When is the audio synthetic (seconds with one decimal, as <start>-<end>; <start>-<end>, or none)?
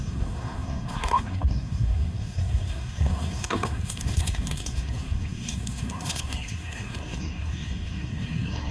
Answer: 0.0-8.7